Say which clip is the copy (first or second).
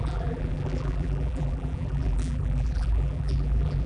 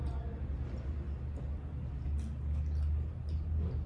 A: first